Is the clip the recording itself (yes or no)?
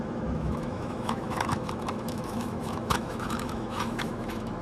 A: no